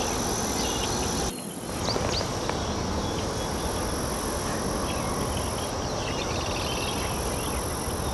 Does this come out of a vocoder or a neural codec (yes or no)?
no